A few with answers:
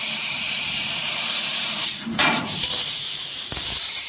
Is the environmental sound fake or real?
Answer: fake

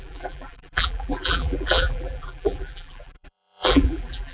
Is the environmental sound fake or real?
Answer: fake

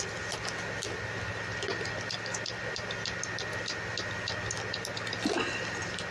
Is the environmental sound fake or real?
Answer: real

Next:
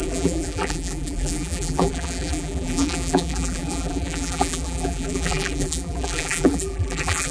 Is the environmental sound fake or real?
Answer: fake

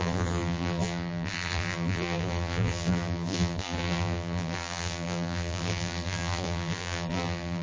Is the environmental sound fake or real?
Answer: fake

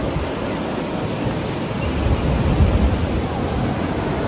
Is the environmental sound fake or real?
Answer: real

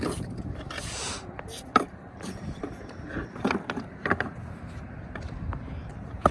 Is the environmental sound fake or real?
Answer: fake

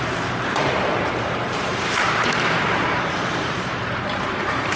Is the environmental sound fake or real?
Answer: fake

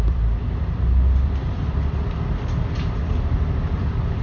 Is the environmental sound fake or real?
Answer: fake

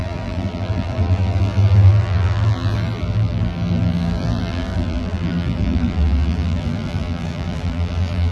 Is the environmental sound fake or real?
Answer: fake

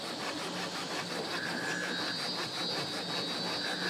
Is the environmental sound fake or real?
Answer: real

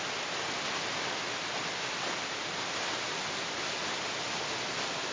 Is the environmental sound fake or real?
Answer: real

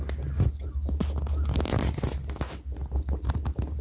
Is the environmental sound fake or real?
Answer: real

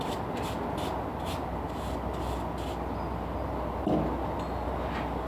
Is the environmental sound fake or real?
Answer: real